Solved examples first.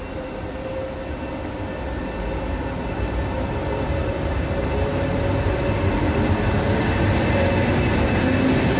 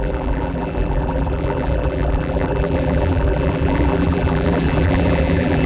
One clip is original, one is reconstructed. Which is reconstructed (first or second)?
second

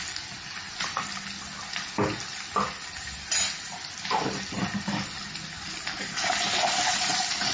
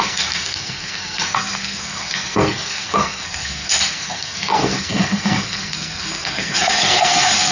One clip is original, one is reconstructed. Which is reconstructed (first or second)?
second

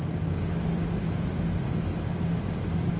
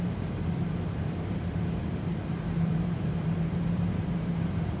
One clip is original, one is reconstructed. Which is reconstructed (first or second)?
second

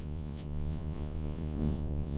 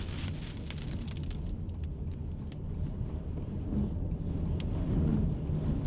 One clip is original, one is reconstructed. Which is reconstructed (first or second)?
first